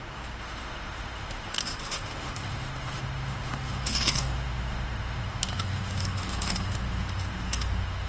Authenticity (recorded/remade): remade